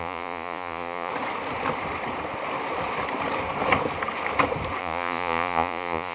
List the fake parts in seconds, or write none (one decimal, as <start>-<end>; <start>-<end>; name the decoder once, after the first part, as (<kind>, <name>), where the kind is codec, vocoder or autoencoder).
0.0-1.1 (vocoder, Vocos); 4.8-6.1